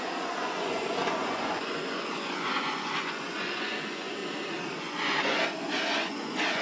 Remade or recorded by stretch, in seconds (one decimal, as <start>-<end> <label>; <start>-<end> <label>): 0.0-4.2 remade; 4.2-4.8 recorded; 4.8-6.6 remade